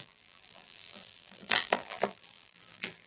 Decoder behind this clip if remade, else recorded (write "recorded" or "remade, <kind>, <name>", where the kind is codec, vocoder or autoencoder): remade, vocoder, BigVGAN v2